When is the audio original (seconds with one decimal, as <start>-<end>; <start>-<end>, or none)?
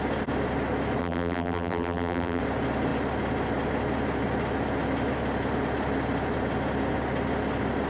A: 0.0-1.0; 2.4-7.9